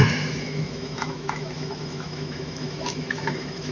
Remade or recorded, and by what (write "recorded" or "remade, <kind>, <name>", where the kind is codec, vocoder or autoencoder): remade, autoencoder, DAC-VAE